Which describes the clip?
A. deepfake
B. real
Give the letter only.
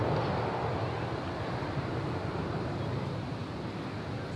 B